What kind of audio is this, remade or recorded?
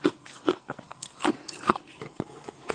remade